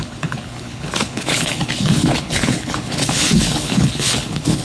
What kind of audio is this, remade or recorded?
remade